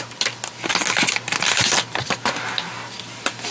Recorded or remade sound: recorded